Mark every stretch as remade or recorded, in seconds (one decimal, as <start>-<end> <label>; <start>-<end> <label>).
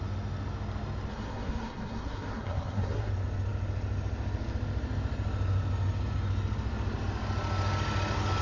0.0-1.1 recorded; 1.1-3.1 remade; 3.1-8.4 recorded